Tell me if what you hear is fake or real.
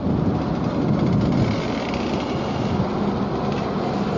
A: real